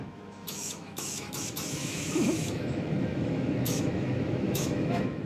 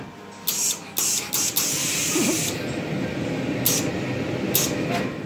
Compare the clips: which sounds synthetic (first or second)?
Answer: first